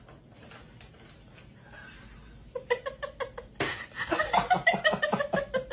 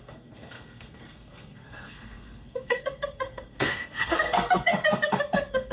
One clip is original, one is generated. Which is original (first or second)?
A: first